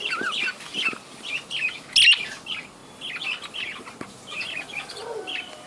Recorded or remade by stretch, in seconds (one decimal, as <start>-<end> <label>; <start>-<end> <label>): 0.0-5.7 recorded